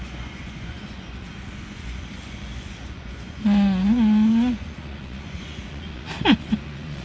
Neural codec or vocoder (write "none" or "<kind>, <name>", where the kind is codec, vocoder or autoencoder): vocoder, Vocos